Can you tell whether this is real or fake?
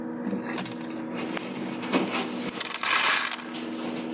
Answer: real